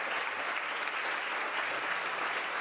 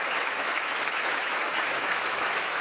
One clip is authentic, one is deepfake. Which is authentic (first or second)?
first